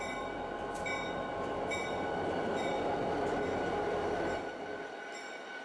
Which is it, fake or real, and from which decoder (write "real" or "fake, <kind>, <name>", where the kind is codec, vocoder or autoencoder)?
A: real